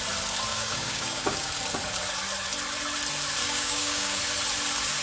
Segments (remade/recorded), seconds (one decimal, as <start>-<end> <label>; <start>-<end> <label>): 0.0-0.5 recorded; 0.5-1.5 remade; 1.5-3.4 recorded; 3.4-4.2 remade; 4.2-5.0 recorded